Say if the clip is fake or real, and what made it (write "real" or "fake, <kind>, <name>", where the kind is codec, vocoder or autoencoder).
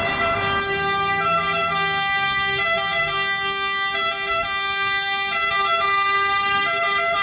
real